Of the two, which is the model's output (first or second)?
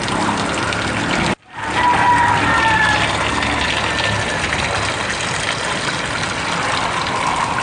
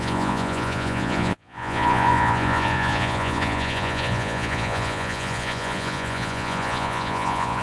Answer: second